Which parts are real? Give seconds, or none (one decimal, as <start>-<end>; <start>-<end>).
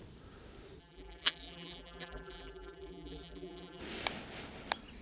0.0-0.8; 3.8-5.0